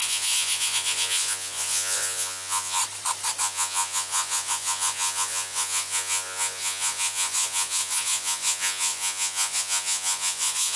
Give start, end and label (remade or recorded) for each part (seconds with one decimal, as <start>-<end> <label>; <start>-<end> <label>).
0.0-2.8 remade; 2.8-3.4 recorded; 3.4-10.8 remade